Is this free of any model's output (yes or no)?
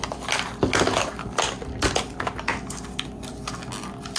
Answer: yes